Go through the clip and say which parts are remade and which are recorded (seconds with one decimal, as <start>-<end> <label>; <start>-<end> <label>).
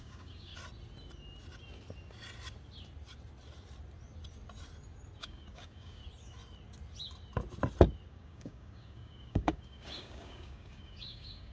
0.0-0.5 remade; 0.5-5.2 recorded; 5.2-6.0 remade; 6.0-8.1 recorded; 8.1-11.5 remade